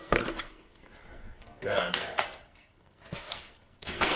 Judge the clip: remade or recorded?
remade